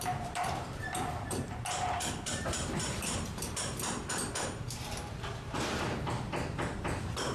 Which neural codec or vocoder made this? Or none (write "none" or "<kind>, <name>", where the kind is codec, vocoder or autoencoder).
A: vocoder, BigVGAN v2